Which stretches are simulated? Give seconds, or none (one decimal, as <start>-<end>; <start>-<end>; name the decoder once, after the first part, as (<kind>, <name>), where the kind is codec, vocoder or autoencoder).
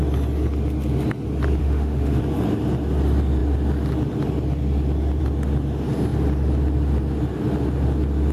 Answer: 1.6-2.2 (autoencoder, DAC-VAE)